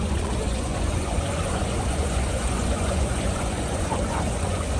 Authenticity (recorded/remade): remade